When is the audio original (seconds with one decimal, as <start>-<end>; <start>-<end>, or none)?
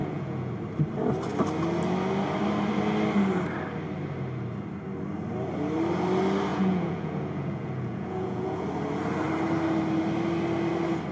0.5-6.5; 8.7-11.1